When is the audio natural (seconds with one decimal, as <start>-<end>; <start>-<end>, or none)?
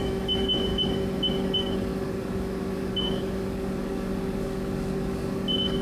0.7-1.3